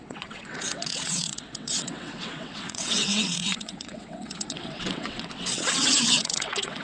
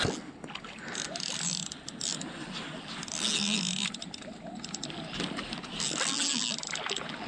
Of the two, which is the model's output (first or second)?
first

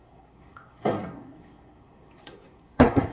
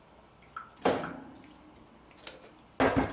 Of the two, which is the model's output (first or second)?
first